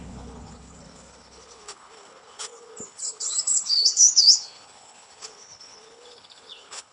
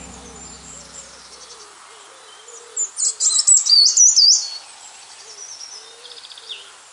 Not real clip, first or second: first